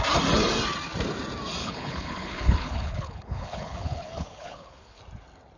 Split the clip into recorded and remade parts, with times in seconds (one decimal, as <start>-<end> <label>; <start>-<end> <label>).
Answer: 0.0-1.6 recorded; 1.6-5.0 remade; 5.0-5.6 recorded

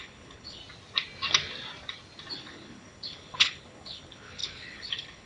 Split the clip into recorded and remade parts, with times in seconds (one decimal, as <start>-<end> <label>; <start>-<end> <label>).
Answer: 0.0-0.6 remade; 0.6-2.3 recorded; 2.3-5.3 remade

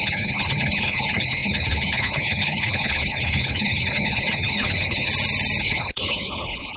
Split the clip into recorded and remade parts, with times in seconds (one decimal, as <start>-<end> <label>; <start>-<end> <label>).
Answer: 0.0-5.1 remade; 5.1-5.6 recorded; 5.6-6.8 remade

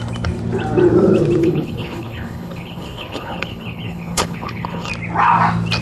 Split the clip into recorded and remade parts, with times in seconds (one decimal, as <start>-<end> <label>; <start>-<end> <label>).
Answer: 0.0-1.4 recorded; 1.4-4.9 remade; 4.9-5.8 recorded

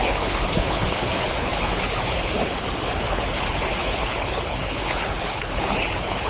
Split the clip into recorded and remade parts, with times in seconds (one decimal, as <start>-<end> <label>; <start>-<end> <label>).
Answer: 0.0-6.3 remade

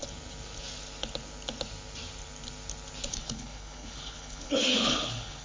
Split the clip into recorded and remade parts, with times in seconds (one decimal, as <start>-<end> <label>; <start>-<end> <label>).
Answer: 0.0-3.1 recorded; 3.1-5.4 remade